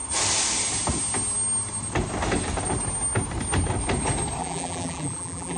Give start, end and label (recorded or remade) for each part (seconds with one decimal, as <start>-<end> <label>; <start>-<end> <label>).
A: 0.0-4.4 recorded; 4.4-5.6 remade